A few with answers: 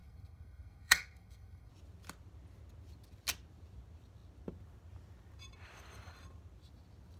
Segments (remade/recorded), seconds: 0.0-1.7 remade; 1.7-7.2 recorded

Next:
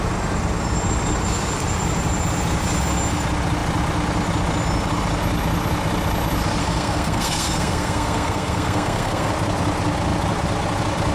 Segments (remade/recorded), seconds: 0.0-6.6 recorded; 6.6-9.3 remade; 9.3-11.1 recorded

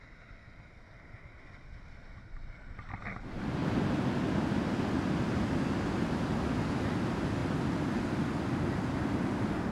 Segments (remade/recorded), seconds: 0.0-9.7 recorded

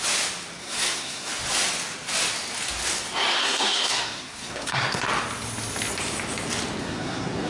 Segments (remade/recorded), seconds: 0.0-0.6 recorded; 0.6-1.3 remade; 1.3-3.4 recorded; 3.4-5.0 remade; 5.0-6.8 recorded; 6.8-7.5 remade

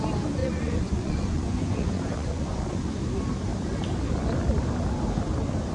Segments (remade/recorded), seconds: 0.0-0.4 recorded; 0.4-2.9 remade; 2.9-5.7 recorded

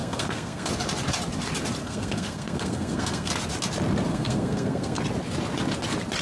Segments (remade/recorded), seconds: 0.0-0.7 remade; 0.7-1.8 recorded; 1.8-3.3 remade; 3.3-4.1 recorded; 4.1-5.0 remade; 5.0-6.2 recorded

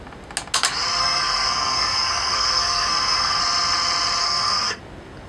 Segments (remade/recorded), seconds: 0.0-1.0 recorded; 1.0-3.4 remade; 3.4-4.2 recorded; 4.2-4.8 remade; 4.8-5.3 recorded